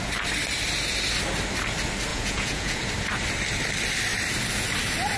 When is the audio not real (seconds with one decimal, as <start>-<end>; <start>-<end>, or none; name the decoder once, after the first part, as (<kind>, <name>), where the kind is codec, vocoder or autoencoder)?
2.1-2.9 (vocoder, Vocos)